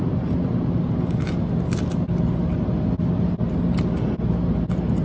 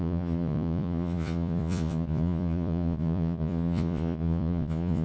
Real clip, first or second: first